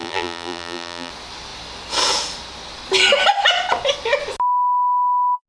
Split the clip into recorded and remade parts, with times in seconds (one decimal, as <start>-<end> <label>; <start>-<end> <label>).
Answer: 0.0-1.1 remade; 1.1-5.5 recorded